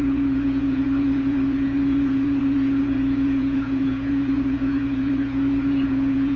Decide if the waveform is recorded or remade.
remade